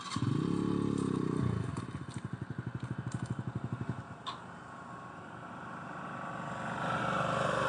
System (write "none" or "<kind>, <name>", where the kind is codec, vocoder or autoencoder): none